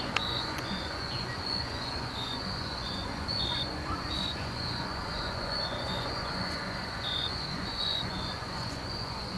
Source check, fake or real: fake